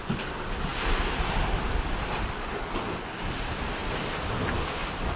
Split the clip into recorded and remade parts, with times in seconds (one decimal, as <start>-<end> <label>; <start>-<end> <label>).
0.0-5.2 recorded